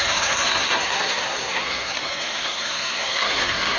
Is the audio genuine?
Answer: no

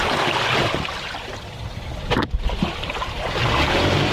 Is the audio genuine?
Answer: yes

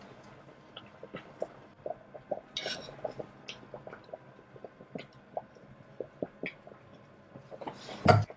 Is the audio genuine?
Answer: yes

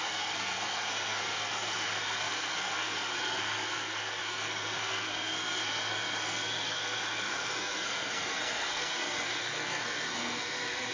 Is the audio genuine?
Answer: no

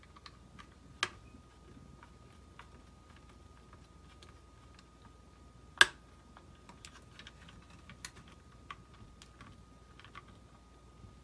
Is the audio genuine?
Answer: yes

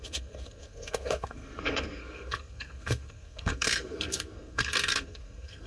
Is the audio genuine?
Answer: no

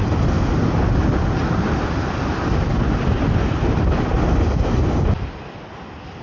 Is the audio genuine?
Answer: yes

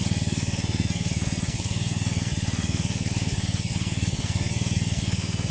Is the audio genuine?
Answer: no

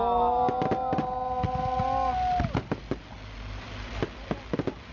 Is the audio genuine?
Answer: yes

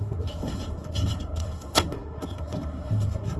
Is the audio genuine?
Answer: no